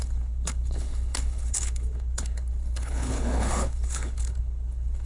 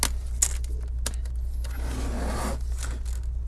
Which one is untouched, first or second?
second